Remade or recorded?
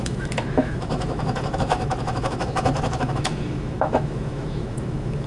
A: remade